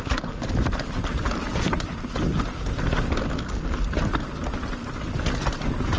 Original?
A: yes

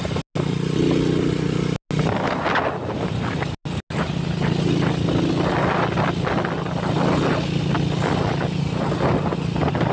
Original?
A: yes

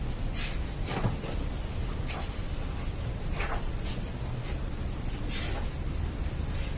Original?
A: yes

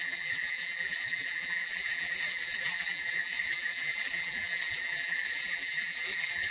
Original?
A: no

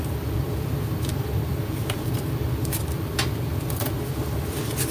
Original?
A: no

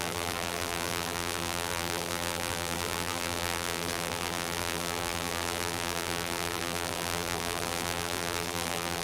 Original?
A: no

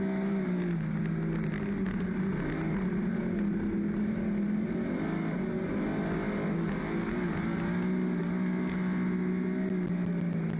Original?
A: yes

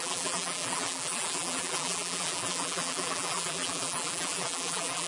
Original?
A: no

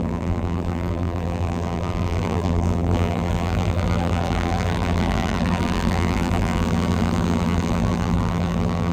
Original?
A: no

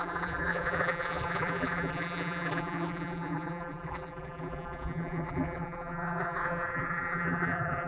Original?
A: no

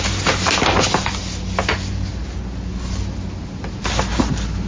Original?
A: yes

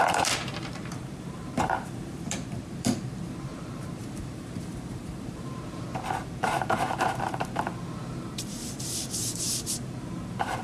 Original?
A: no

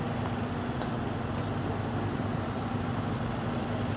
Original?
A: no